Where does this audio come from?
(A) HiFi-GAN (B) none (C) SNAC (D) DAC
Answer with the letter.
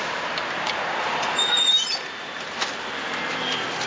B